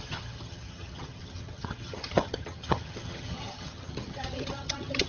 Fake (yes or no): yes